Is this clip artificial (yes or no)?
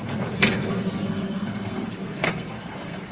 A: yes